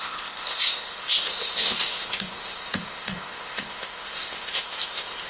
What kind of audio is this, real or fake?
fake